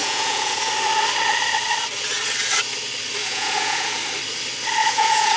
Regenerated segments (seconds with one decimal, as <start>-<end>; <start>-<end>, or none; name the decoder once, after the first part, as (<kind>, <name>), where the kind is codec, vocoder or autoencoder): 0.0-0.7 (vocoder, Vocos); 3.2-4.0; 4.8-5.4